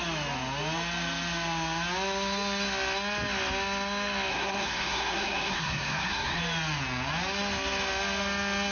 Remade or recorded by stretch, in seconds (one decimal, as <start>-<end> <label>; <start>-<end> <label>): 0.0-4.3 recorded; 4.3-6.4 remade; 6.4-8.7 recorded